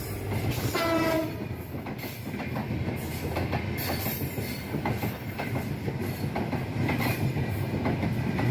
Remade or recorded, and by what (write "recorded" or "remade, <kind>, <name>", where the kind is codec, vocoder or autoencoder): recorded